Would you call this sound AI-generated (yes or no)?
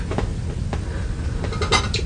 no